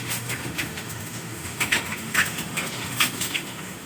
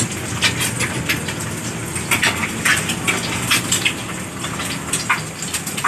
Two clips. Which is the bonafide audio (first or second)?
second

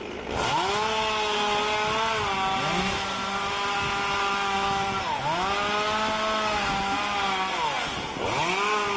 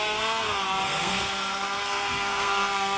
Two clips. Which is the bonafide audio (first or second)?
first